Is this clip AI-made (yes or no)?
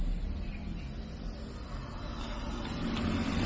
no